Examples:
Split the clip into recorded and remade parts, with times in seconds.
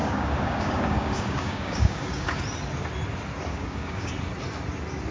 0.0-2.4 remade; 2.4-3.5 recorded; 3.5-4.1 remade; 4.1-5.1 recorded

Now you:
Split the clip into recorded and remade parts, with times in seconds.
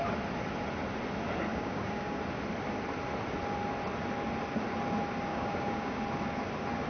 0.0-1.5 recorded; 1.5-2.2 remade; 2.2-5.3 recorded; 5.3-6.0 remade; 6.0-6.9 recorded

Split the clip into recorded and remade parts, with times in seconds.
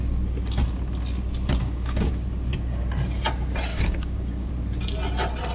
0.0-1.6 recorded; 1.6-2.1 remade; 2.1-3.7 recorded; 3.7-4.5 remade; 4.5-5.5 recorded